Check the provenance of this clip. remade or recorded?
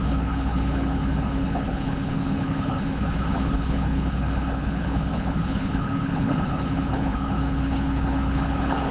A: remade